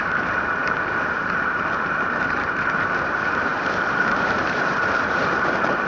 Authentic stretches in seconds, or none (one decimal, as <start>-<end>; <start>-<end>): none